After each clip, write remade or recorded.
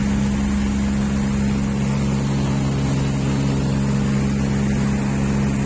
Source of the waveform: recorded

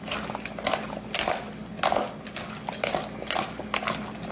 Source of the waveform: recorded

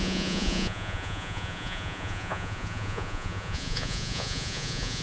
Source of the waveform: remade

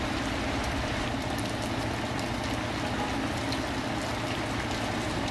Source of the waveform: recorded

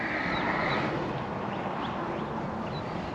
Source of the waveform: recorded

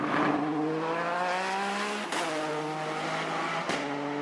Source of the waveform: recorded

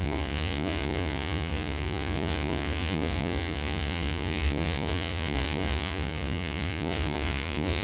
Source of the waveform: remade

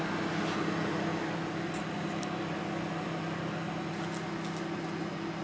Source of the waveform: recorded